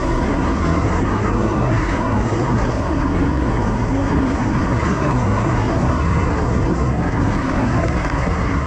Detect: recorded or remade remade